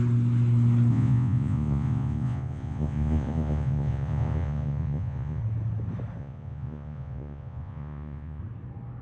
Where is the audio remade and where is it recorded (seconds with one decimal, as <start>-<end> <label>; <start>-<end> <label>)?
0.0-0.9 recorded; 0.9-5.4 remade; 5.4-6.2 recorded; 6.2-8.4 remade; 8.4-9.0 recorded